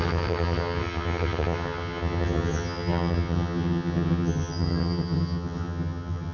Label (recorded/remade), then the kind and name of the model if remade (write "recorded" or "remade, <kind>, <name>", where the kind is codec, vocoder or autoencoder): remade, vocoder, HiFi-GAN